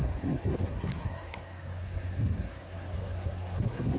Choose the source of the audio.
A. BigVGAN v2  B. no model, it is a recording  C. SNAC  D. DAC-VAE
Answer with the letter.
C